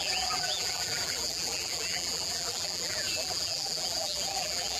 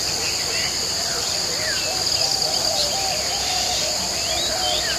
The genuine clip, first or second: second